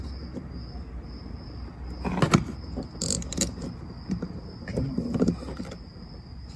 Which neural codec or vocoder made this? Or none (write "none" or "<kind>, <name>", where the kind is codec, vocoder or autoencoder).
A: none